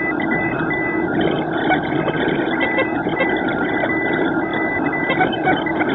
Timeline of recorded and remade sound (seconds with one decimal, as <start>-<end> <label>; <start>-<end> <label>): 0.0-5.9 recorded